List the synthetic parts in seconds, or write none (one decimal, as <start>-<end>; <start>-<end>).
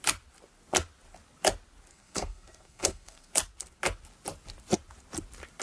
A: 1.9-3.3